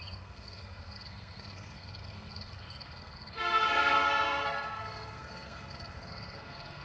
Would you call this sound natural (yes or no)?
no